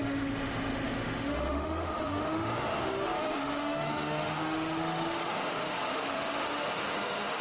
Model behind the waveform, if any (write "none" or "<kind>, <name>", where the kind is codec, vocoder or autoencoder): autoencoder, DAC-VAE